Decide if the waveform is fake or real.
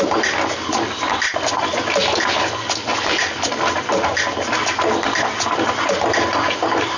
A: real